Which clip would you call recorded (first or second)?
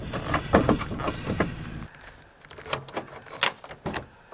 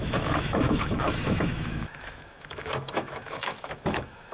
first